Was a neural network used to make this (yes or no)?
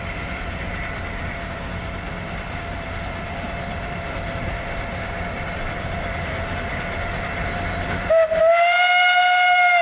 no